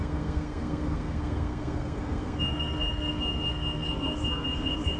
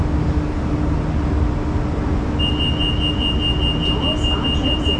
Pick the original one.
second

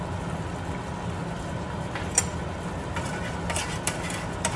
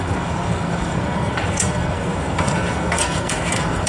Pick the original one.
first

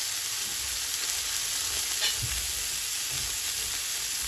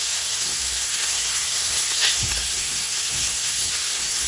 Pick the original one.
first